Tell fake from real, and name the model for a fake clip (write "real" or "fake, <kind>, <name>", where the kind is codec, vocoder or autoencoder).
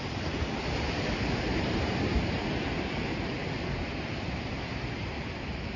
real